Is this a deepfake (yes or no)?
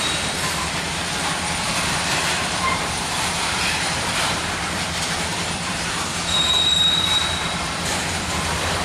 yes